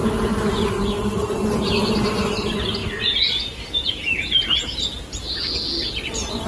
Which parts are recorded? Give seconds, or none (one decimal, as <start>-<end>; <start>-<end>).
0.0-6.5